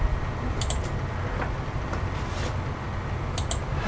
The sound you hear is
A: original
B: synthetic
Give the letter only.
A